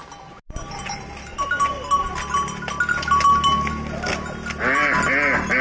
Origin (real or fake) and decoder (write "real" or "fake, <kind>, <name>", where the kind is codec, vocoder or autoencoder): real